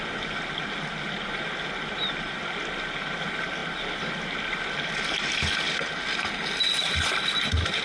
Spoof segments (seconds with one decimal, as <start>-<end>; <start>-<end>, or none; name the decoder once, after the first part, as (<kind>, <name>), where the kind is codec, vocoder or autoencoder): none